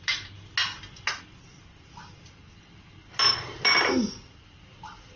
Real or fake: real